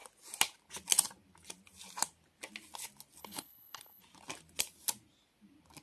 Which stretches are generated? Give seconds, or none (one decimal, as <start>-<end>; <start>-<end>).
3.2-4.0